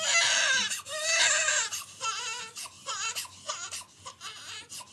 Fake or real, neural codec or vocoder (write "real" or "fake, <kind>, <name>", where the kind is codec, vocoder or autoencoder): real